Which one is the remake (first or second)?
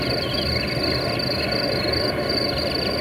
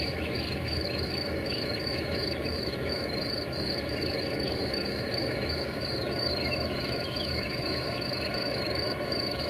second